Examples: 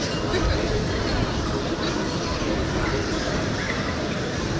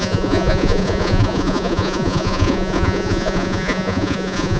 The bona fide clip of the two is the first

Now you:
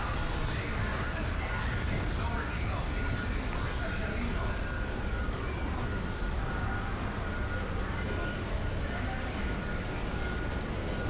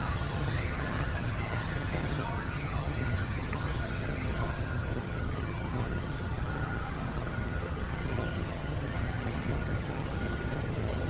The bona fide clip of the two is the first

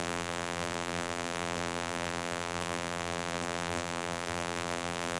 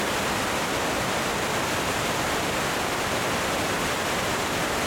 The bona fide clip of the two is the second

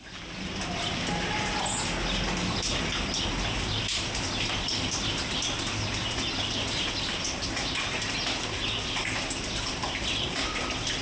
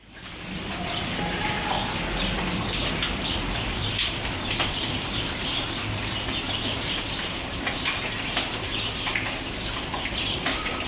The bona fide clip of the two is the first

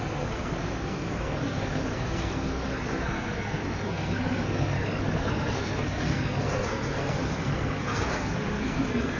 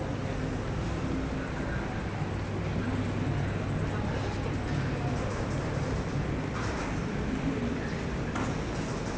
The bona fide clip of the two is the second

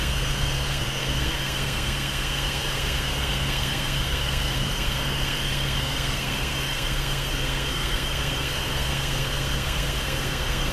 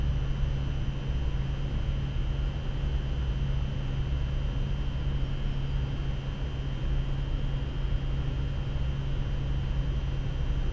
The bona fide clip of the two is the second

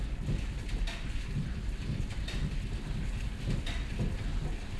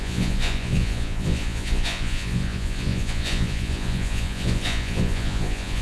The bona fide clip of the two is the first